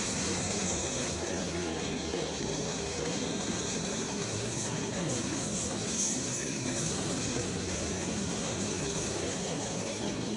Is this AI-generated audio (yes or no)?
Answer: yes